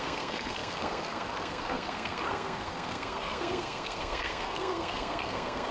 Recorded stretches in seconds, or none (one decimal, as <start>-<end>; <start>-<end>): none